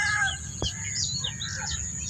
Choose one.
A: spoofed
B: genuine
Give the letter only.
B